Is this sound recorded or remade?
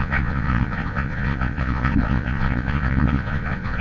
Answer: remade